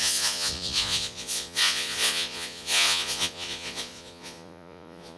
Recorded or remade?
remade